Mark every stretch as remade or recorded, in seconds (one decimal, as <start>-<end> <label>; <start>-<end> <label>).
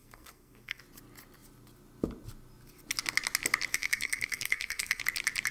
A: 0.0-0.8 remade; 0.8-3.7 recorded; 3.7-5.0 remade; 5.0-5.5 recorded